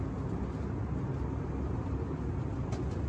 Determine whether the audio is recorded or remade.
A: recorded